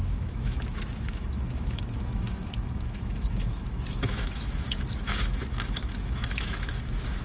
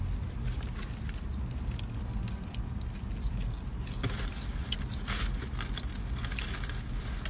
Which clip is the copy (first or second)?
first